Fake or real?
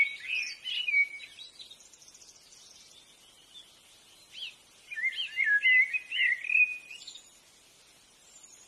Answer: real